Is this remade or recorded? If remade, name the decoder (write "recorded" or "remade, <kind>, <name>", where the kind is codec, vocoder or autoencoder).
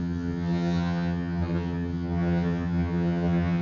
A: remade, vocoder, HiFi-GAN